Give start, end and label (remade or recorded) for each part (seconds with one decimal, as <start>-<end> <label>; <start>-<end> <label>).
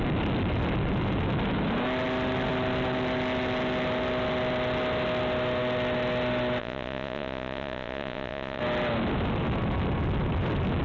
0.0-6.6 recorded; 6.6-8.6 remade; 8.6-10.8 recorded